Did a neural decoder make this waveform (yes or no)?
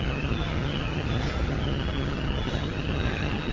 yes